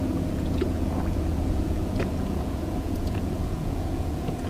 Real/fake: fake